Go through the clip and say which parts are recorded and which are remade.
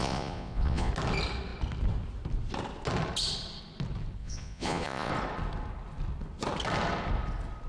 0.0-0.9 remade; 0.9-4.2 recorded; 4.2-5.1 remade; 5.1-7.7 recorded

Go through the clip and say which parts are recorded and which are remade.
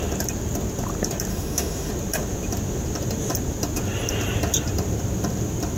0.0-1.3 recorded; 1.3-1.9 remade; 1.9-5.8 recorded